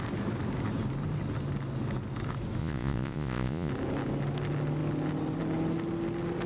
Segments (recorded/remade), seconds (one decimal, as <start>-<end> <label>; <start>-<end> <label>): 0.0-2.6 recorded; 2.6-3.7 remade; 3.7-6.5 recorded